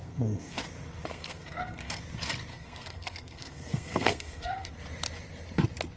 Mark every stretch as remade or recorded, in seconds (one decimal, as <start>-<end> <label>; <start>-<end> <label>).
0.0-0.6 remade; 0.6-1.1 recorded; 1.1-2.0 remade; 2.0-2.5 recorded; 2.5-4.7 remade; 4.7-6.0 recorded